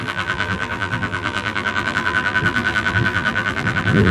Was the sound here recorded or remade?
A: remade